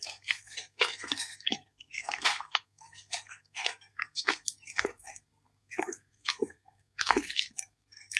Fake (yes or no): yes